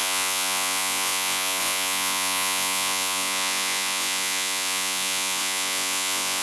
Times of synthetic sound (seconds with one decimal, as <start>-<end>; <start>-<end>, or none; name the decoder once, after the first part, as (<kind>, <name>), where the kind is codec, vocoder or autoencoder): 0.0-6.4 (vocoder, Vocos)

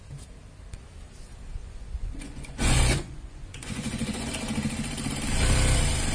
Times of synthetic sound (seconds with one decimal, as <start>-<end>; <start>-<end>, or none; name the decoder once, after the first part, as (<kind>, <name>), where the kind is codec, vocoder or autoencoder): 1.6-4.3 (vocoder, Vocos)

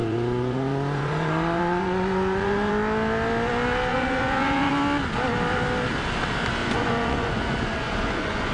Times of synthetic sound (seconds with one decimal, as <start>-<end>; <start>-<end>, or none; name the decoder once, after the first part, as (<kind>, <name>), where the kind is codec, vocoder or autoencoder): 0.0-2.7 (vocoder, Vocos); 3.9-4.7; 6.6-8.5

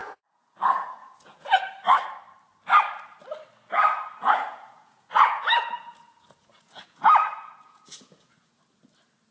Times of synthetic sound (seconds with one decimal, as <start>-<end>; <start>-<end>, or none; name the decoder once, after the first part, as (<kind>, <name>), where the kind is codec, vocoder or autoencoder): 0.0-1.7 (vocoder, Vocos); 4.2-8.6

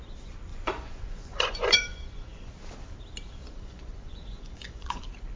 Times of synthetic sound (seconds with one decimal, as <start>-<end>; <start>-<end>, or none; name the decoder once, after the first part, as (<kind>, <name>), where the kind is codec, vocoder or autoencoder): 0.5-2.5 (vocoder, Vocos); 3.4-5.0

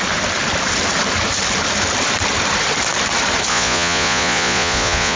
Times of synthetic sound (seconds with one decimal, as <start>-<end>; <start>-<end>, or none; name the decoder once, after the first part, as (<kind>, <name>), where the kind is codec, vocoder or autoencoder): 3.5-5.2 (vocoder, Vocos)